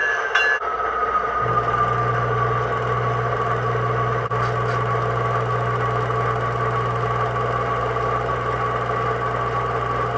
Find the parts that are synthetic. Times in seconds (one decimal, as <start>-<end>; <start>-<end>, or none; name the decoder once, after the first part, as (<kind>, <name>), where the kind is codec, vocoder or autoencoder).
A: none